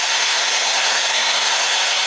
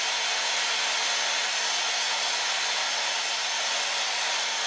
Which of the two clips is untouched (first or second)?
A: second